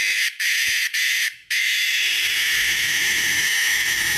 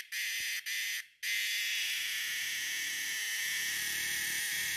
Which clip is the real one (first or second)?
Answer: second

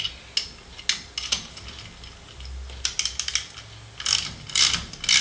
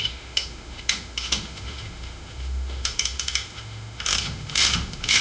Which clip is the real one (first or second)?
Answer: first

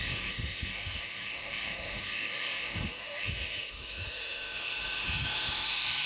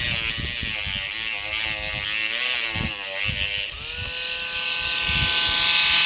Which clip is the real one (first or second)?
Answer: second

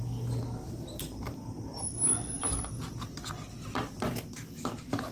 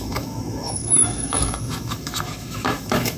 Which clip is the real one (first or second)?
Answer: first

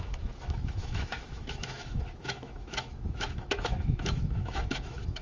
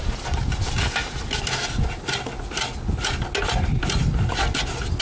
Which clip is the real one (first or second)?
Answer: second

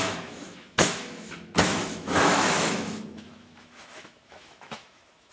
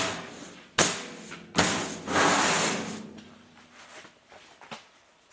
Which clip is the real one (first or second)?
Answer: second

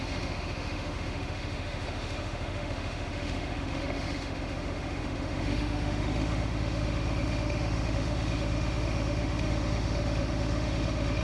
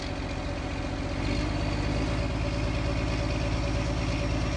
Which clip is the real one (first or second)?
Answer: second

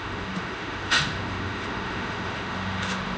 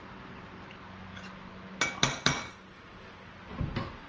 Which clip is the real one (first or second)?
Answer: second